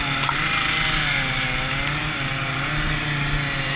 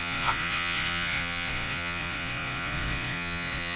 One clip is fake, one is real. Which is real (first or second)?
first